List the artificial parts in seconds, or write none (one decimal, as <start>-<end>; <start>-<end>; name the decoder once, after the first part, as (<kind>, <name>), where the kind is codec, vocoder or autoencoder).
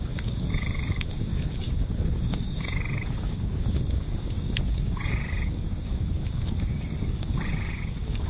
0.0-8.3 (codec, DAC)